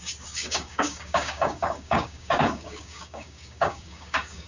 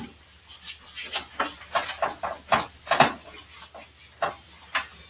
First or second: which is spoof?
first